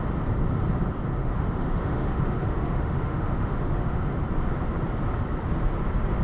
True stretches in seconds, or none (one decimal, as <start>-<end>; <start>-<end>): 0.0-1.2; 4.2-6.2